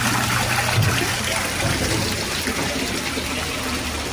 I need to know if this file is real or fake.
real